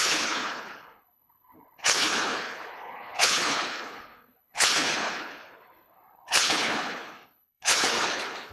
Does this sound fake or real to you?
fake